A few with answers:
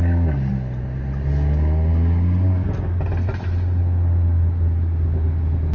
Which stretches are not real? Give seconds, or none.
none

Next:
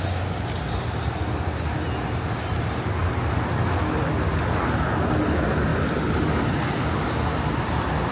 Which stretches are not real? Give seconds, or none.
none

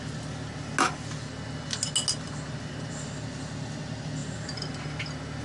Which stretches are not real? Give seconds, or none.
none

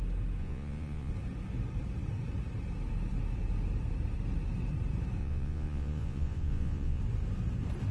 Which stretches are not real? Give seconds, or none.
0.4-1.1 (vocoder, Vocos); 5.2-7.0

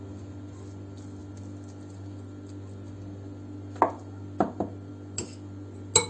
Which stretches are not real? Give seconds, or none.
none

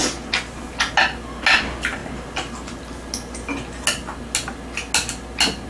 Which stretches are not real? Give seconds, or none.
none

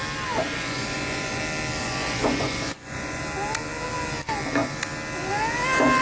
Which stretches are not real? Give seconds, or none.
0.4-1.4 (vocoder, Vocos); 1.8-3.2